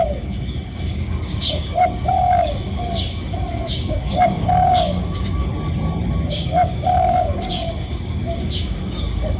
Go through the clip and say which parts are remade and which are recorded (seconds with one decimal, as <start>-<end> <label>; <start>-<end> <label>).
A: 0.0-5.5 remade; 5.5-6.3 recorded; 6.3-9.4 remade